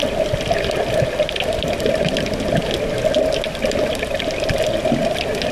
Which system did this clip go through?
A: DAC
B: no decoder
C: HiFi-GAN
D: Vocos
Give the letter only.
B